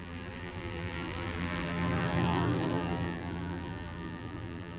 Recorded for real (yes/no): no